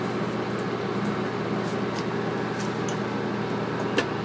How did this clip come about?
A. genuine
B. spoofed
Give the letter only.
A